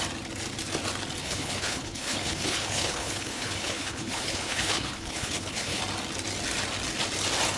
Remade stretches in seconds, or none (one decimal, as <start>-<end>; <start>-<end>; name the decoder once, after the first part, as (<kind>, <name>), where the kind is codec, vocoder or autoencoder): 1.2-5.8 (codec, HILCodec)